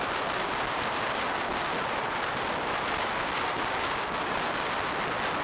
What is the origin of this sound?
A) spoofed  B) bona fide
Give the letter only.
B